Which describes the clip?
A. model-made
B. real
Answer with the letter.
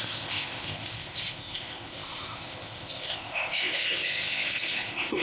A